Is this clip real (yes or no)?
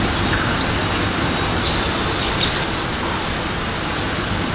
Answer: yes